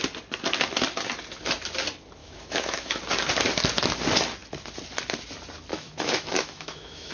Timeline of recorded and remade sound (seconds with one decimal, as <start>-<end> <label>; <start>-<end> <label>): 0.0-2.2 recorded; 2.2-3.0 remade; 3.0-5.7 recorded; 5.7-7.1 remade